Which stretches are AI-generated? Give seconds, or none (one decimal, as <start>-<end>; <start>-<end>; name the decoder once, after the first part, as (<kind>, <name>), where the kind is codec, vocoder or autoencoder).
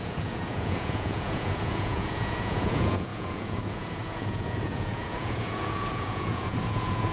0.0-7.1 (vocoder, Vocos)